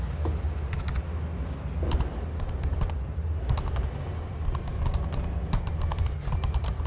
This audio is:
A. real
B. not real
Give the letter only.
A